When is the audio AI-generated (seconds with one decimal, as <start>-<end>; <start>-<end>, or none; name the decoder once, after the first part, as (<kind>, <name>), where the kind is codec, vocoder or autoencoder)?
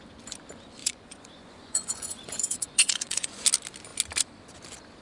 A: 0.8-3.4 (vocoder, Vocos)